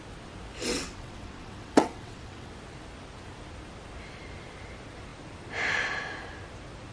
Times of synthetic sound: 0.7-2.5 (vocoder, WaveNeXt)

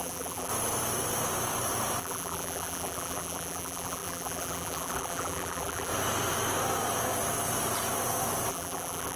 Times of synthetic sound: 0.0-0.5 (vocoder, BigVGAN v2); 2.0-5.9; 8.5-9.2

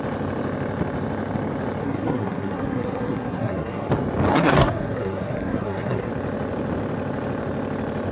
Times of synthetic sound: 1.8-3.9 (codec, SNAC); 4.3-6.1

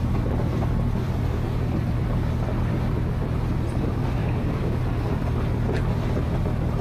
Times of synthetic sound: 4.2-4.8 (codec, DAC)

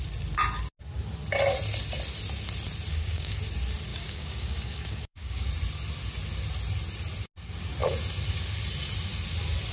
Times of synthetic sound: 2.9-3.4 (codec, DAC); 3.9-5.5

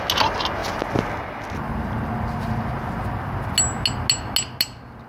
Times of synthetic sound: none